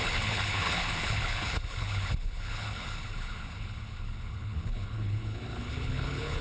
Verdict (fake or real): fake